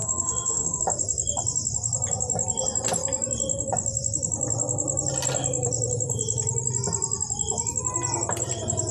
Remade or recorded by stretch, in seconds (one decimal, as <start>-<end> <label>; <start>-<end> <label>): 0.0-0.8 remade; 0.8-8.9 recorded